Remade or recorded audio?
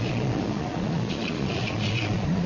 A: remade